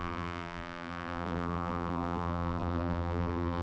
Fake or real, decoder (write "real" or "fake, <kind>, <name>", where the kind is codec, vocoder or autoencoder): fake, vocoder, BigVGAN v2